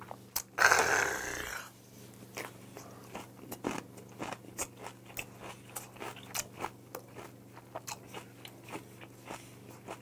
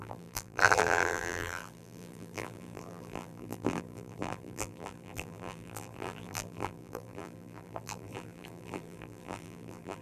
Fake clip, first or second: second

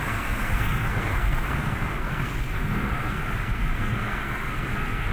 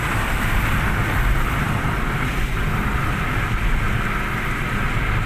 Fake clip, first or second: first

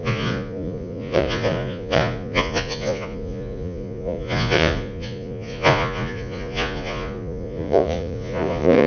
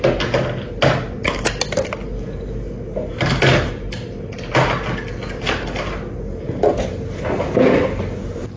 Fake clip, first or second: first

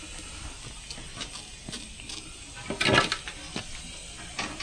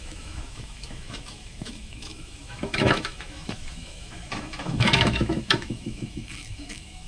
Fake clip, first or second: second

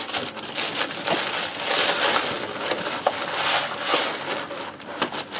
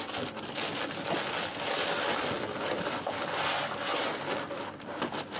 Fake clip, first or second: first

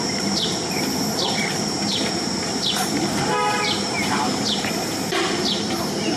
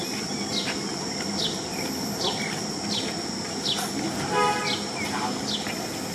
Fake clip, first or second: first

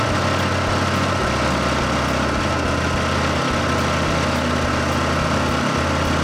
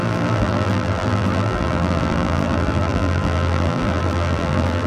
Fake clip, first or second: second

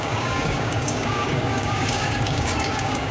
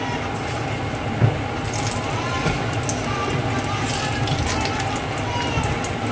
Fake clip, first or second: first